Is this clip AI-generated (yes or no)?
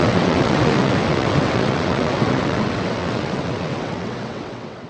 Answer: yes